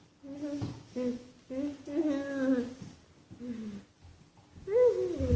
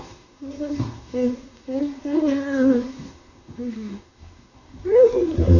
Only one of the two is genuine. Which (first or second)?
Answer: first